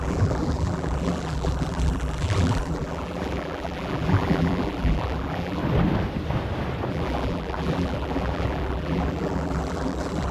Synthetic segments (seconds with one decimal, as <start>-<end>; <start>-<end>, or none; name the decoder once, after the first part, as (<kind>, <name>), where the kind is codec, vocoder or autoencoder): 0.0-5.6 (vocoder, BigVGAN v2); 6.9-10.3